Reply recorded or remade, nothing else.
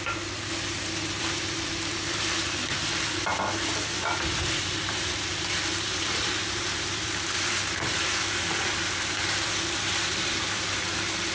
remade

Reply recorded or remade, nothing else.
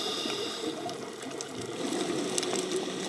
recorded